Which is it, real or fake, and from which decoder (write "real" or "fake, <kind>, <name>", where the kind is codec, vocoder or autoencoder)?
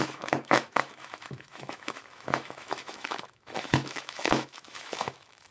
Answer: fake, autoencoder, DAC-VAE